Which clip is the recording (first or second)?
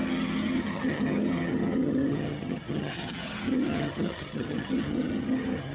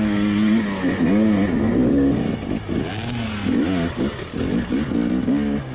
second